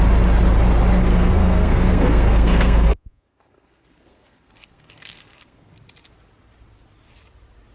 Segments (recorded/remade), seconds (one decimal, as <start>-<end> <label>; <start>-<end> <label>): 0.0-1.1 recorded; 1.1-5.7 remade; 5.7-7.7 recorded